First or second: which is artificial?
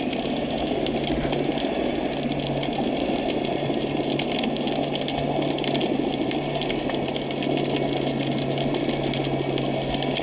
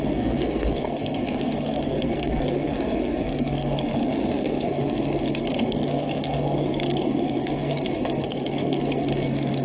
second